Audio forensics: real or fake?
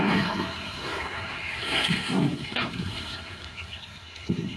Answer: fake